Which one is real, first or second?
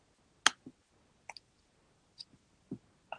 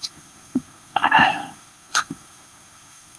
first